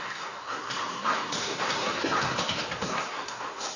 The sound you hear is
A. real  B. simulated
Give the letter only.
B